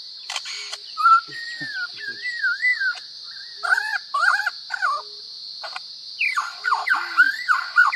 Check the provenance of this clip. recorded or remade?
recorded